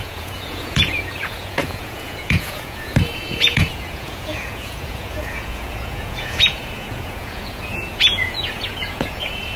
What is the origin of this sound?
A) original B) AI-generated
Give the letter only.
B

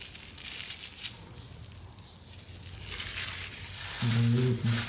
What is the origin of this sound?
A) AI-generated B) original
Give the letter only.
B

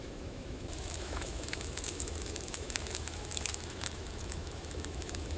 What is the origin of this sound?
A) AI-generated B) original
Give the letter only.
A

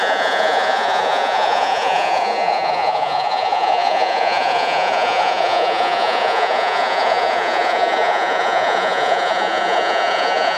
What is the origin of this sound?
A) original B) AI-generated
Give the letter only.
B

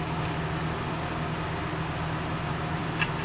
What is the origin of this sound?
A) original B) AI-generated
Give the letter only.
A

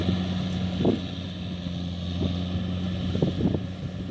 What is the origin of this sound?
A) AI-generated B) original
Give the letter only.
B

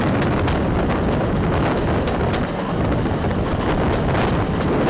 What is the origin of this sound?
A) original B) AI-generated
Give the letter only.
A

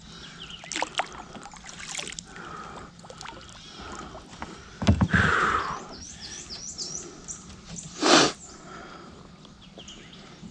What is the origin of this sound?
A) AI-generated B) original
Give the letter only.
B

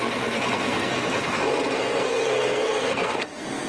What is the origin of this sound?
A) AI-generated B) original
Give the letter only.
A